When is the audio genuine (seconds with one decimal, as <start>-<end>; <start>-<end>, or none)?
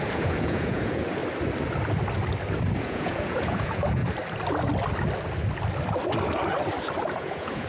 1.2-2.8; 4.0-7.1